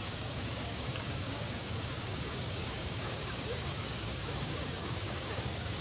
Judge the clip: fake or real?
fake